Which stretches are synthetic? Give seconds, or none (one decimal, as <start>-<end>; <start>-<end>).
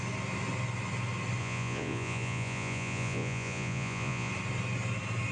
1.4-4.3